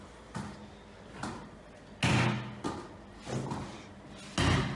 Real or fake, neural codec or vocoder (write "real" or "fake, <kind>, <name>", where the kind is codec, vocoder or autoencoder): real